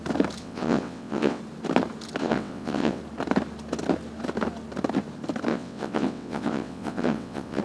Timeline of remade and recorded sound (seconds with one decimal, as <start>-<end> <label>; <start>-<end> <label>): 0.0-0.4 recorded; 0.4-1.4 remade; 1.4-2.2 recorded; 2.2-3.0 remade; 3.0-5.5 recorded; 5.5-7.6 remade